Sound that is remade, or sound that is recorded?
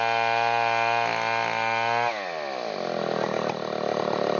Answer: recorded